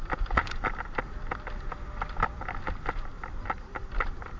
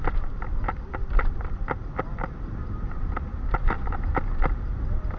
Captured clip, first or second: first